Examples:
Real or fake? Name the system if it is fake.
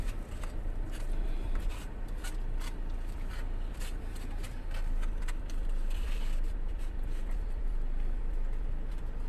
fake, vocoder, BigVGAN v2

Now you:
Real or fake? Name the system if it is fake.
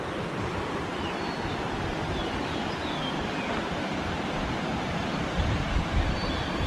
fake, vocoder, BigVGAN v2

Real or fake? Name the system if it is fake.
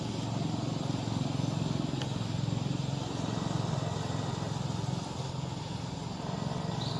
real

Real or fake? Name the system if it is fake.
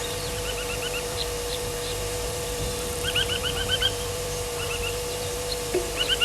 fake, vocoder, BigVGAN v2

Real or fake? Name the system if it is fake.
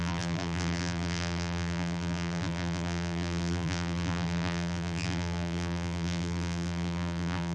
fake, vocoder, BigVGAN v2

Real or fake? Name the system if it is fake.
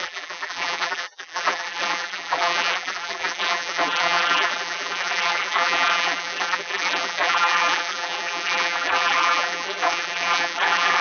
fake, vocoder, BigVGAN v2